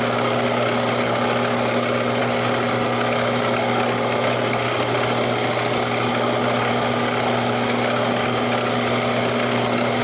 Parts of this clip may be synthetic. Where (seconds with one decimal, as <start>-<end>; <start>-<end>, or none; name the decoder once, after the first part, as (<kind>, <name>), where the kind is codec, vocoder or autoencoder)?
none